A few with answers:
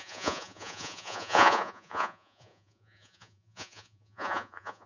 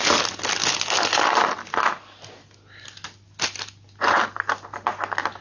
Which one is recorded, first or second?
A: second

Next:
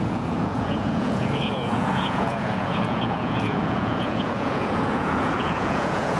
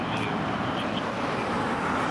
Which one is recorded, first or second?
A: second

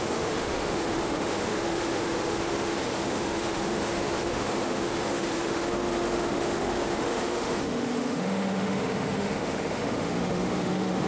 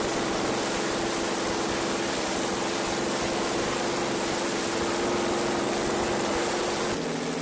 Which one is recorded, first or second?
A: second